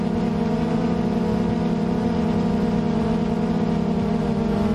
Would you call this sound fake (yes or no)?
no